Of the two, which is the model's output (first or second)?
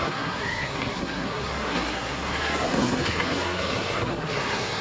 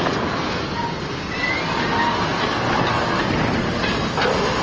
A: first